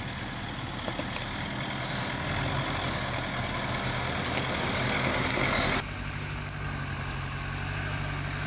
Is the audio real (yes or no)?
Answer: yes